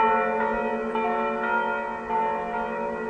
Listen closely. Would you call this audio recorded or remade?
recorded